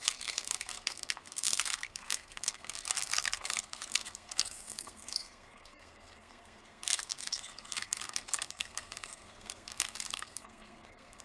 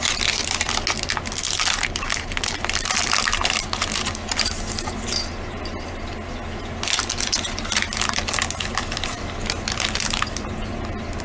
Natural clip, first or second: second